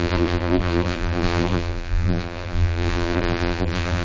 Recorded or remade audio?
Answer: remade